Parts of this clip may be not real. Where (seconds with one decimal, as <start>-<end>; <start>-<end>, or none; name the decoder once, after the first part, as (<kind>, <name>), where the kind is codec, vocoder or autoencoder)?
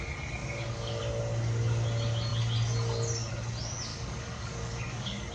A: 0.4-1.0 (codec, DAC); 3.9-5.3